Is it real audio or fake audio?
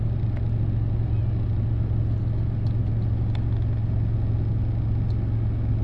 real